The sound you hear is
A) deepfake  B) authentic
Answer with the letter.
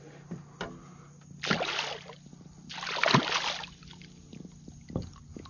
B